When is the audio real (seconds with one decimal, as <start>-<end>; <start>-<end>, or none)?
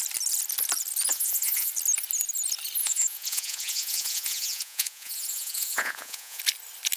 0.0-1.1; 1.7-2.8; 6.4-7.0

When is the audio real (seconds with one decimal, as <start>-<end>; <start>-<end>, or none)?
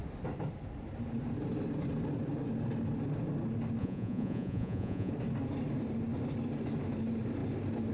0.0-3.8; 5.1-7.9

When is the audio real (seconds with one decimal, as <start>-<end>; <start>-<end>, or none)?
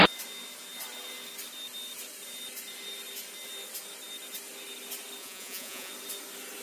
0.0-5.2; 5.9-6.6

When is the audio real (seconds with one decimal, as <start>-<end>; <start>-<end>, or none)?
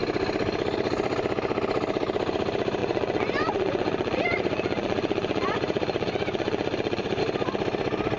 0.0-2.8; 7.2-8.2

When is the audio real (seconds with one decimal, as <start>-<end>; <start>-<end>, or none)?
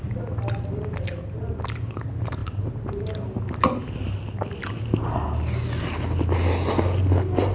0.0-7.5